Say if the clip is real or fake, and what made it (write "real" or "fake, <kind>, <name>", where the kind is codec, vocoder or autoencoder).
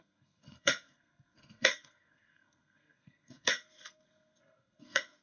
fake, codec, SNAC